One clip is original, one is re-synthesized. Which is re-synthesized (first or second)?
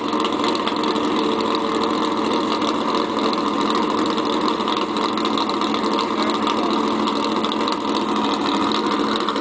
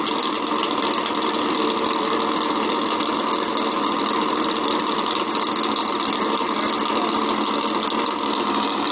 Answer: second